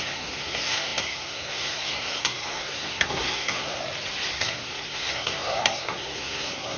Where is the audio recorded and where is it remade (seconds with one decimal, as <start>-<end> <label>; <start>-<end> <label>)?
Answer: 0.0-3.8 remade; 3.8-4.3 recorded; 4.3-6.8 remade